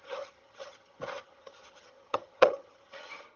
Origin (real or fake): fake